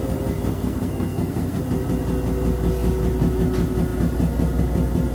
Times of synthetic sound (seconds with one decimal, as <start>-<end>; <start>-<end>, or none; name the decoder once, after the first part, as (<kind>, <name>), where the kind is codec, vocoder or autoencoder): 0.5-1.6 (codec, SNAC)